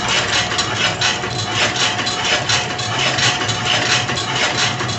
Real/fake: real